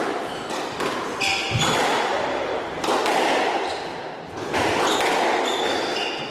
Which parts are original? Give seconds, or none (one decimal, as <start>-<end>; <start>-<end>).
0.0-6.3